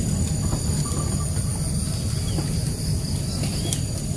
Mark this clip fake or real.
real